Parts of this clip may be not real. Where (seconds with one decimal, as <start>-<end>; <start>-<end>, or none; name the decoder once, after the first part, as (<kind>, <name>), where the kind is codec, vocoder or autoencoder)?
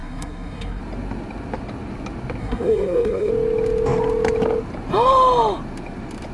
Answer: 0.0-0.8 (codec, SNAC); 2.4-3.3